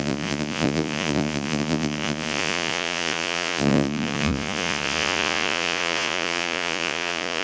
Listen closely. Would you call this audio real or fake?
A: fake